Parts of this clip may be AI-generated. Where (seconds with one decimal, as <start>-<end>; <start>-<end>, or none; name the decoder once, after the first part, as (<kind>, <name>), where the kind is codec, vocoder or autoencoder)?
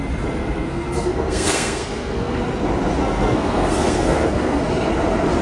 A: 0.4-2.4 (codec, SNAC); 3.0-4.6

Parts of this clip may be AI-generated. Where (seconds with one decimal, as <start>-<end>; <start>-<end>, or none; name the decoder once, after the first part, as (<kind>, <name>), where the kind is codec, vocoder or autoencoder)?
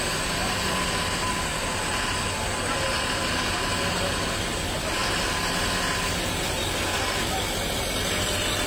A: none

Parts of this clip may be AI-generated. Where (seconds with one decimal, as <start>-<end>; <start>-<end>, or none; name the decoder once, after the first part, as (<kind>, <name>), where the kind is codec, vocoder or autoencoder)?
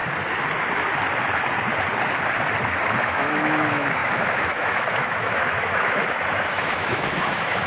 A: 3.0-7.7 (autoencoder, DAC-VAE)